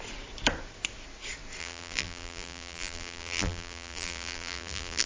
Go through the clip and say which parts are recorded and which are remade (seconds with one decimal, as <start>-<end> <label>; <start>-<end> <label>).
0.0-1.6 recorded; 1.6-5.1 remade